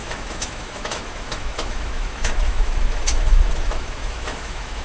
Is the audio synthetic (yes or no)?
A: yes